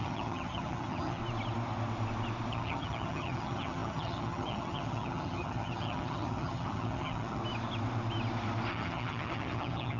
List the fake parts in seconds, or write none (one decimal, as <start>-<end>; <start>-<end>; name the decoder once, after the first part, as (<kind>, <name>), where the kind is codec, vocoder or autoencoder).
0.0-1.2 (vocoder, HiFi-GAN); 2.5-7.4; 8.7-10.0